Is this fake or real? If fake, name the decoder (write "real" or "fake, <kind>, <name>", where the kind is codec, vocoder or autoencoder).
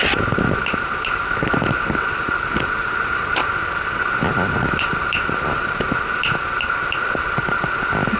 real